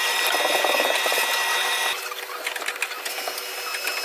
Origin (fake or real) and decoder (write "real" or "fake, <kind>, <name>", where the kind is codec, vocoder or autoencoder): real